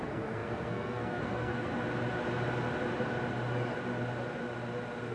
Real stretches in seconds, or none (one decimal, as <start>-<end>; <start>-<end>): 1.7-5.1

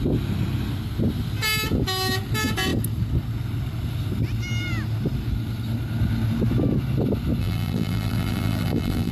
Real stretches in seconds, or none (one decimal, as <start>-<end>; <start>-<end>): 0.0-7.4

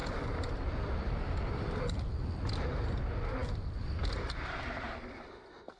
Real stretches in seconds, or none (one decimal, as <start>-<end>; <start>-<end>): 2.1-3.4; 5.2-5.8

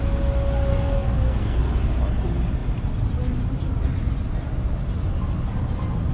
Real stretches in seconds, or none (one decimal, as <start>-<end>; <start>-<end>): 0.0-0.7; 1.6-6.1

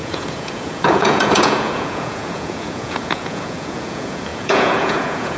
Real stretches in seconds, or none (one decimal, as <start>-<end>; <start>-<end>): none

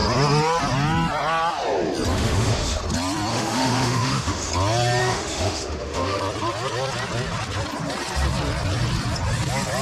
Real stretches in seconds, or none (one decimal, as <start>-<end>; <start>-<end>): 0.0-2.1; 2.8-3.3; 4.5-5.0; 6.2-9.8

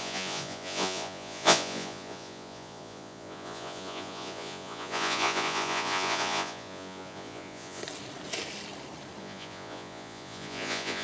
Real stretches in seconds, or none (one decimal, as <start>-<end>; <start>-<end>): 7.8-9.2